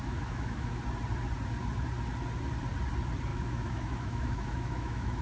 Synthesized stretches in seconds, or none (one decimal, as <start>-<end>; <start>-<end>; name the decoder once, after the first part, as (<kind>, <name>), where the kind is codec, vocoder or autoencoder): 0.0-0.8 (autoencoder, DAC-VAE); 3.3-5.2